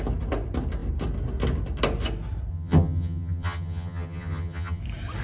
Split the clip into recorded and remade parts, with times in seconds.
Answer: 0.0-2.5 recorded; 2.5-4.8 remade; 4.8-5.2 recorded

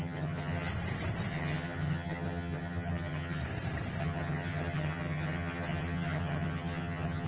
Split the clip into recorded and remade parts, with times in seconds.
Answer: 0.0-0.7 remade; 0.7-1.3 recorded; 1.3-3.4 remade; 3.4-4.0 recorded; 4.0-7.3 remade

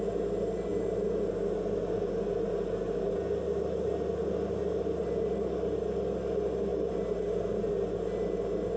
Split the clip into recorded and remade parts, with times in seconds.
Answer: 0.0-8.8 recorded

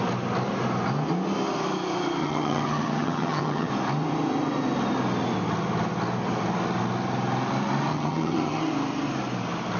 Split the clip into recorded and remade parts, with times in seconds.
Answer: 0.0-2.2 recorded; 2.2-3.7 remade; 3.7-7.9 recorded; 7.9-8.6 remade; 8.6-9.8 recorded

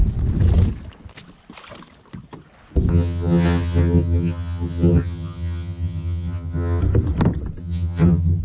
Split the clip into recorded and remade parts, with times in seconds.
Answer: 0.0-2.9 recorded; 2.9-6.8 remade; 6.8-7.6 recorded; 7.6-8.4 remade

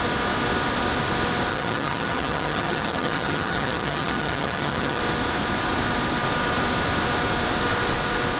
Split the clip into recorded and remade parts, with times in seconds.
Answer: 0.0-1.5 recorded; 1.5-5.0 remade; 5.0-8.4 recorded